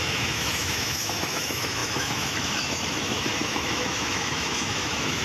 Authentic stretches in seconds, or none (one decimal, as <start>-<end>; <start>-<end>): none

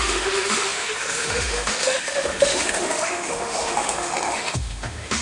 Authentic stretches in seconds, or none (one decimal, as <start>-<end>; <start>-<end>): none